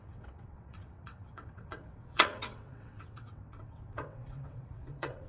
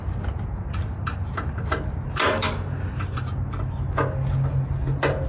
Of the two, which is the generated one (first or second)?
first